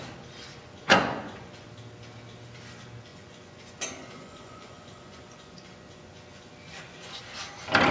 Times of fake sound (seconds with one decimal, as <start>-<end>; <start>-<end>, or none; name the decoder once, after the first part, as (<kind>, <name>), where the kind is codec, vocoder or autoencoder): 0.5-1.7 (vocoder, Vocos); 3.1-7.2